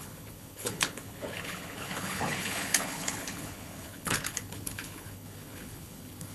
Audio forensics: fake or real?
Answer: fake